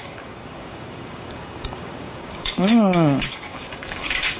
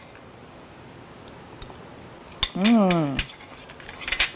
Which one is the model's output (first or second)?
first